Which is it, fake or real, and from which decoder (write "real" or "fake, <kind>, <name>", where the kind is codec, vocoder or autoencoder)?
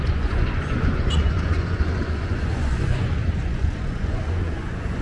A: fake, vocoder, Vocos